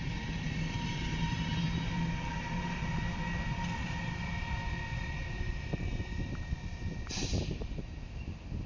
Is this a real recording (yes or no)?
no